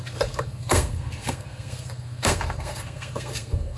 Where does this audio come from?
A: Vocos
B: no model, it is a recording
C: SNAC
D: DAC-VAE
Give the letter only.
C